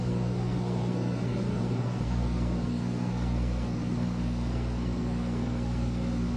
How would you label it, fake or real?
fake